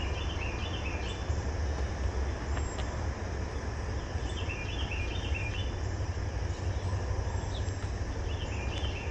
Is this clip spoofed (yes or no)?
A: no